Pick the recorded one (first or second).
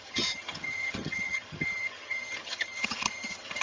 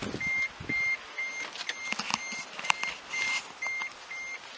second